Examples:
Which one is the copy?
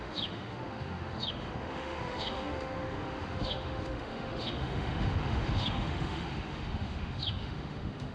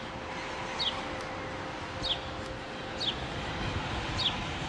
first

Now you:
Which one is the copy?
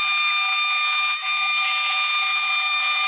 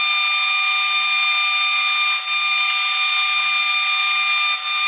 first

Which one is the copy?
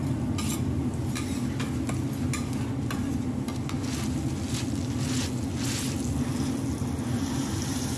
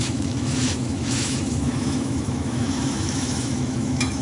second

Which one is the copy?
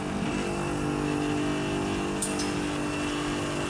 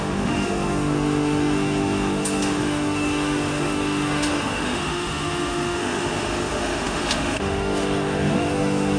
second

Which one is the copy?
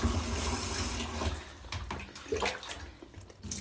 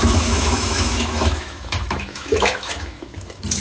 second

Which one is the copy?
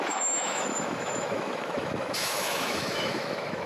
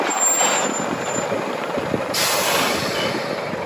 first